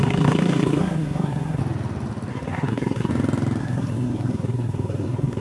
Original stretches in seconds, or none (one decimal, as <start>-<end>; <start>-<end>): 1.6-2.3; 3.1-3.6